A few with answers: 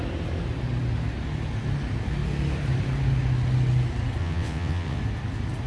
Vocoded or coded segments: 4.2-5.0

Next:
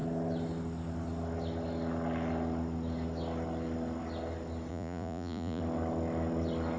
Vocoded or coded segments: 4.7-5.6

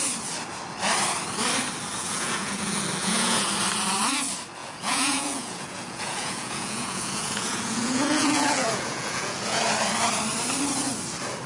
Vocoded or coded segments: 2.0-2.6; 3.0-3.5; 4.6-9.6

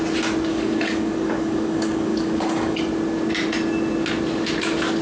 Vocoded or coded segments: 0.5-2.8

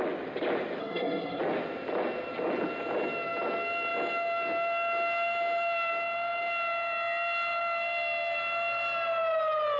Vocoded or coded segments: 0.8-1.4

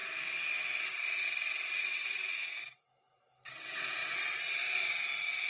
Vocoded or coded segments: 0.0-0.9; 1.8-3.5